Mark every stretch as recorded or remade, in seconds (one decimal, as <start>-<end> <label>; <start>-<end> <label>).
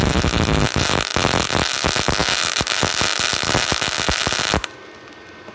0.0-5.5 recorded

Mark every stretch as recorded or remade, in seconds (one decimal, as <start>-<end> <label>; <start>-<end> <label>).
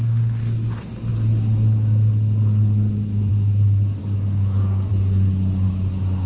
0.0-4.0 recorded; 4.0-4.9 remade; 4.9-6.3 recorded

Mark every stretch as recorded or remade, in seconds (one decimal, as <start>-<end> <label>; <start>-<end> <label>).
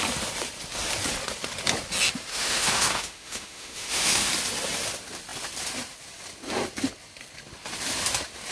0.0-2.3 recorded; 2.3-4.3 remade; 4.3-8.5 recorded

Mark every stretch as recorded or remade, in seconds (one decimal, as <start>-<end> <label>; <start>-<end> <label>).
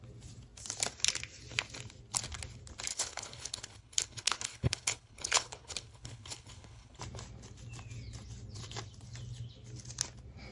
0.0-2.9 recorded; 2.9-7.0 remade; 7.0-10.5 recorded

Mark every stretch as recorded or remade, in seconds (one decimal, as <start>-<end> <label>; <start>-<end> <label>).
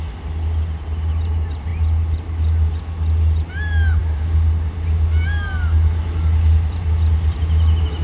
0.0-8.0 recorded